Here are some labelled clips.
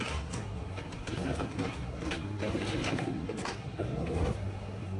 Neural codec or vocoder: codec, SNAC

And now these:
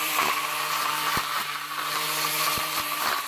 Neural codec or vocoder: vocoder, BigVGAN v2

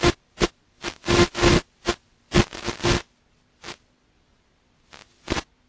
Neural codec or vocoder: none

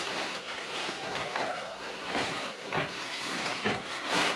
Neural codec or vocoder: codec, SNAC